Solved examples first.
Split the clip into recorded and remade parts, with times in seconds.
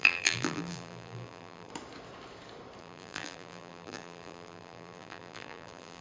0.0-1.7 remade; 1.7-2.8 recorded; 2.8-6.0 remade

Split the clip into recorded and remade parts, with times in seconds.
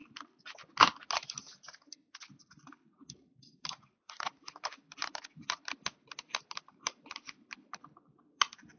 0.0-3.3 recorded; 3.3-5.3 remade; 5.3-5.8 recorded; 5.8-7.9 remade; 7.9-8.8 recorded